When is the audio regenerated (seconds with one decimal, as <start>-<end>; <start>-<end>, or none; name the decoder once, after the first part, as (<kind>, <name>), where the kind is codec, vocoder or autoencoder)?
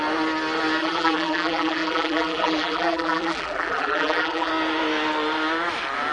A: 0.8-4.5 (vocoder, BigVGAN v2)